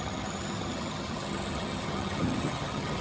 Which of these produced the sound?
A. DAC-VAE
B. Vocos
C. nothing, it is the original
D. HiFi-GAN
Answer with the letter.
D